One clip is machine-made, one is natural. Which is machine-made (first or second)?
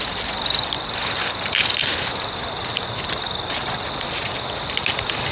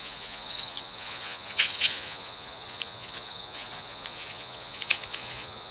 second